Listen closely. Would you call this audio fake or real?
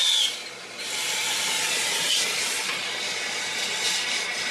real